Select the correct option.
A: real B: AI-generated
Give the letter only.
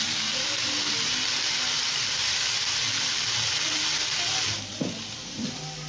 A